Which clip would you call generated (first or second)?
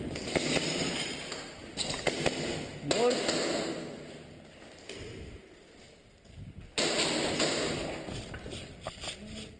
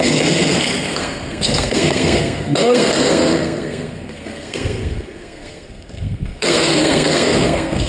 second